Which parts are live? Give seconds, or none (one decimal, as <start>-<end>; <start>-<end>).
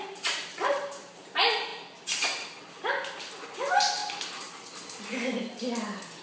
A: 0.0-6.2